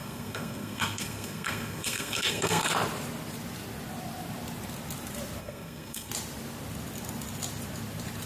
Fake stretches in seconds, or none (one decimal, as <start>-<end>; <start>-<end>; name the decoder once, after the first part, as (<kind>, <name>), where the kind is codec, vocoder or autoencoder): 0.0-2.7 (codec, SNAC); 5.4-6.1